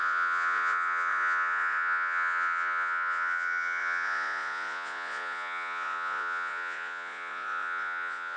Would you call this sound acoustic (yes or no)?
no